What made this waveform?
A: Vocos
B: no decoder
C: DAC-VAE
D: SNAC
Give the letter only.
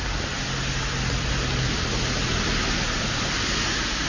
B